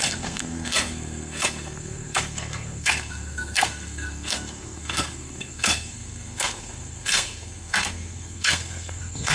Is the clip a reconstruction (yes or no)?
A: yes